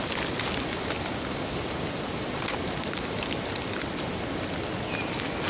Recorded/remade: recorded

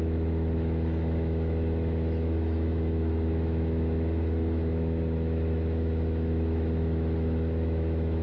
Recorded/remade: remade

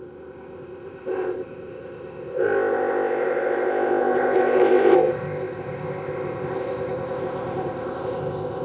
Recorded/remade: remade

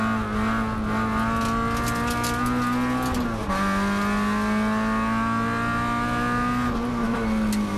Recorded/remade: recorded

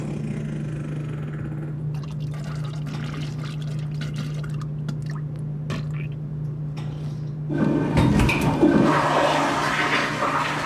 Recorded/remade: recorded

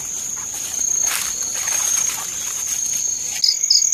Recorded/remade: recorded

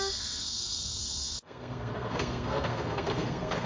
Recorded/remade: remade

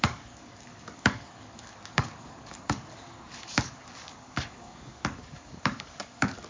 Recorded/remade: remade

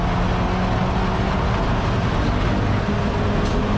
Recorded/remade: recorded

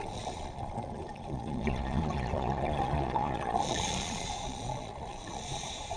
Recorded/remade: remade